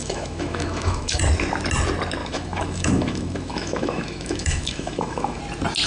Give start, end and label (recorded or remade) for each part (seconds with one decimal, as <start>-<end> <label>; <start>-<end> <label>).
0.0-1.2 remade; 1.2-2.2 recorded; 2.2-5.4 remade; 5.4-5.9 recorded